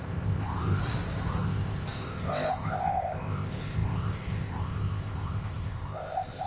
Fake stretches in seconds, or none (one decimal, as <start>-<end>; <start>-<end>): 0.0-0.8; 1.4-6.5